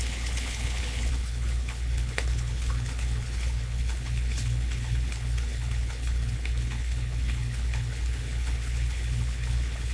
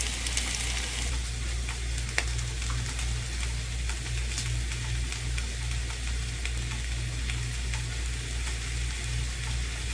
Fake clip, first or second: first